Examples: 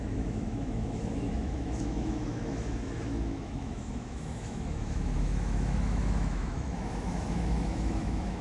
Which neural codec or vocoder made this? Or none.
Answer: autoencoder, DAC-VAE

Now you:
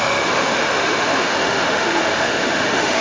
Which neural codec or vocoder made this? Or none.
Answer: autoencoder, DAC-VAE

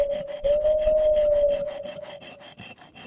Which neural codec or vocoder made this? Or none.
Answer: none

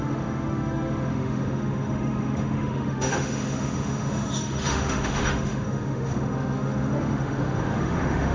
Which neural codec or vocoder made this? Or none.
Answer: autoencoder, DAC-VAE